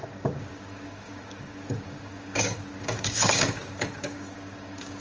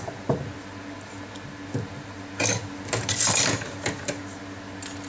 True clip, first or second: second